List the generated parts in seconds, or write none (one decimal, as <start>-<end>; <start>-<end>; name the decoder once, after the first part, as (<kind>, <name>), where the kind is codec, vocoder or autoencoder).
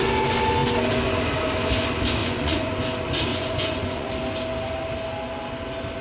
2.2-2.7 (vocoder, Vocos); 3.3-4.1